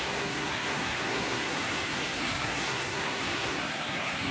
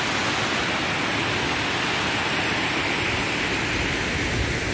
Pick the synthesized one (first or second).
first